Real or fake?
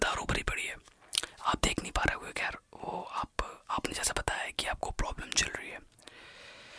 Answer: real